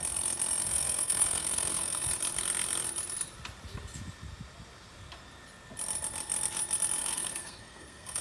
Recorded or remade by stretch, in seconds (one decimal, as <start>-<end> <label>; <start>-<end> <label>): 0.0-0.6 recorded; 0.6-2.1 remade; 2.1-7.0 recorded; 7.0-8.2 remade